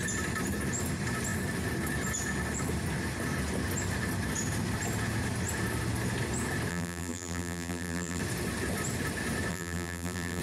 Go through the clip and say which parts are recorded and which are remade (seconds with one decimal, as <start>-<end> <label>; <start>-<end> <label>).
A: 0.0-6.7 recorded; 6.7-8.2 remade; 8.2-9.5 recorded; 9.5-10.4 remade